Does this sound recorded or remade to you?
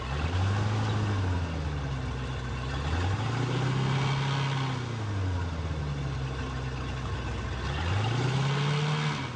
recorded